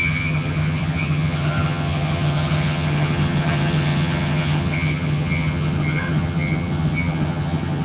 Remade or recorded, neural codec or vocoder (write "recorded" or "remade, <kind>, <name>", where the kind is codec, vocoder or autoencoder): remade, vocoder, HiFi-GAN